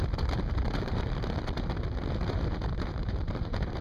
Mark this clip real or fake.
fake